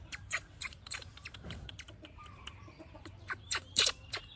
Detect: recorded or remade remade